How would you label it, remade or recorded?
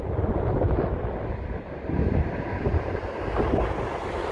recorded